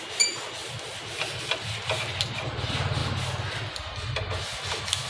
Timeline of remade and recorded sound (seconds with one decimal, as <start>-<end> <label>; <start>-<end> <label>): 0.0-5.1 recorded